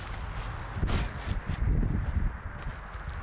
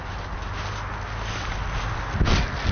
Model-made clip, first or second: first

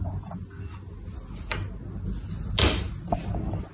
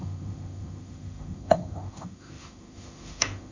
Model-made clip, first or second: second